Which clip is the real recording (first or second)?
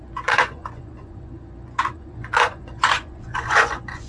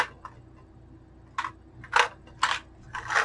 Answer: second